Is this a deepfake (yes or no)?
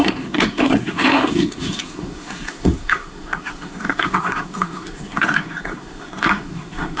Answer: yes